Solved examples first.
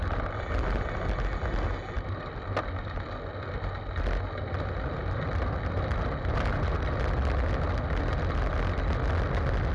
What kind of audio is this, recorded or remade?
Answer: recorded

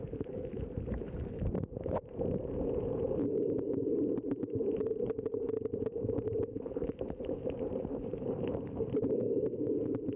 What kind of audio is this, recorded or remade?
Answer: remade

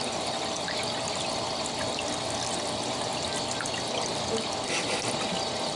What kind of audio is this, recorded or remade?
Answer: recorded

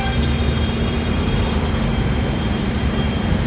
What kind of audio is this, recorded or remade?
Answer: remade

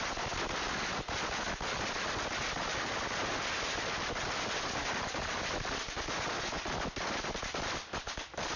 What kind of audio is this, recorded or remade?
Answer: recorded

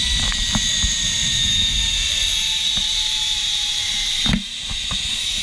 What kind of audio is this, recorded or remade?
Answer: remade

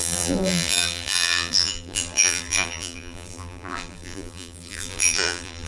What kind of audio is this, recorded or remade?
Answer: remade